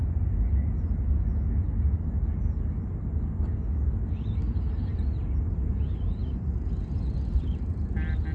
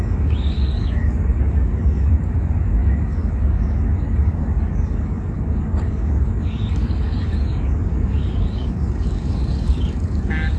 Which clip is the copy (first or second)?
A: second